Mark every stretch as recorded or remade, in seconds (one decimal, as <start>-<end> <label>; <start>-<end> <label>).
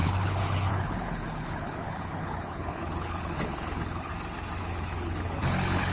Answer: 0.0-4.1 remade; 4.1-4.6 recorded; 4.6-5.9 remade